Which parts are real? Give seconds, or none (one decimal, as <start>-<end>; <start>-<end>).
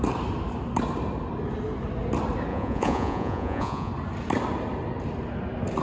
0.0-2.5; 3.9-5.8